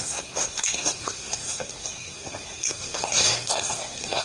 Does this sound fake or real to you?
fake